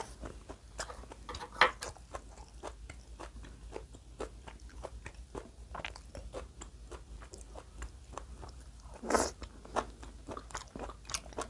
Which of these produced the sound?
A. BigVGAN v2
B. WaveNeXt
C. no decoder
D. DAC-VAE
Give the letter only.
C